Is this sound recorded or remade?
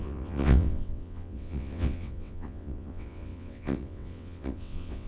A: remade